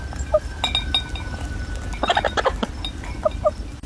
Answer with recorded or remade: recorded